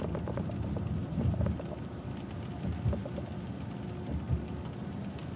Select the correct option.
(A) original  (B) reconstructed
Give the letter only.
A